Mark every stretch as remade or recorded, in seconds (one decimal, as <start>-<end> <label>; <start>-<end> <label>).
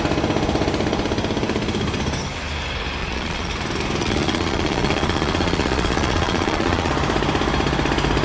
0.0-3.0 recorded; 3.0-3.5 remade; 3.5-4.0 recorded; 4.0-6.9 remade; 6.9-8.2 recorded